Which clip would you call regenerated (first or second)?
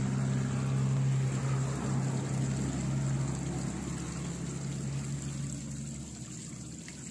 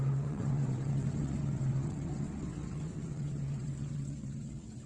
second